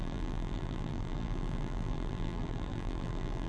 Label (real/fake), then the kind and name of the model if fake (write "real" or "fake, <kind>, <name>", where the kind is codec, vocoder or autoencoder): fake, vocoder, BigVGAN v2